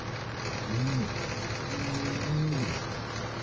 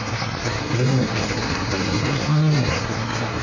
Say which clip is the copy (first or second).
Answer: second